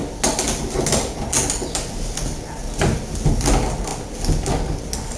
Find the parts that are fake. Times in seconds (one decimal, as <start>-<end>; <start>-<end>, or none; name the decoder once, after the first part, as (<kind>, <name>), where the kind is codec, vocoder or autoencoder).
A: none